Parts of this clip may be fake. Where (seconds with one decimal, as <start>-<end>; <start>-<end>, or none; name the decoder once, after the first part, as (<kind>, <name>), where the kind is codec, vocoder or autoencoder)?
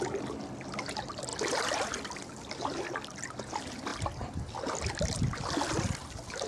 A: none